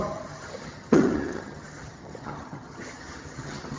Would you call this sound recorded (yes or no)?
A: no